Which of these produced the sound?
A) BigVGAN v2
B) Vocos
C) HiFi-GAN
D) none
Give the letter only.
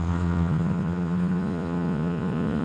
B